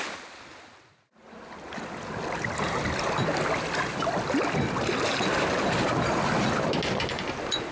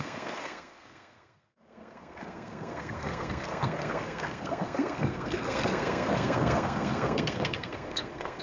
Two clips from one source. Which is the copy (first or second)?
second